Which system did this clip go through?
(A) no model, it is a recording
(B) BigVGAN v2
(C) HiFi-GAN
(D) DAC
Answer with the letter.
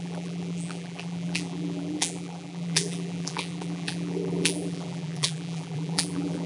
B